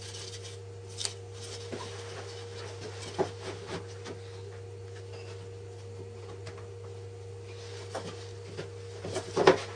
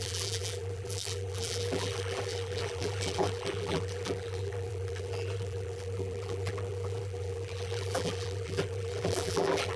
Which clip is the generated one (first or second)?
second